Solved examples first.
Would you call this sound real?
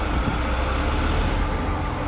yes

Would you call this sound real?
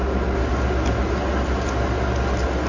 yes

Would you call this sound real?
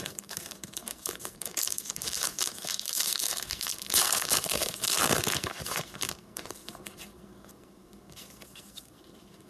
no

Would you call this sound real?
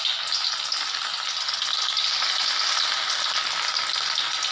yes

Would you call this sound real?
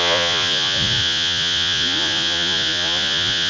no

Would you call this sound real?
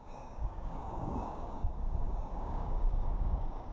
no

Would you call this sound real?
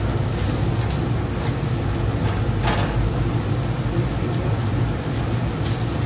yes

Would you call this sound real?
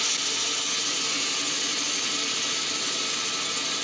yes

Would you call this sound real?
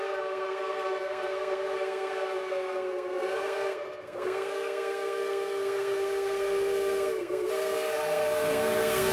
no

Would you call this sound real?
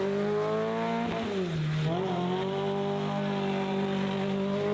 yes